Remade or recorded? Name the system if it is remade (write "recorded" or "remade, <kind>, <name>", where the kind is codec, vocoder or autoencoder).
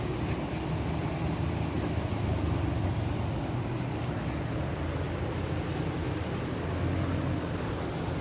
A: recorded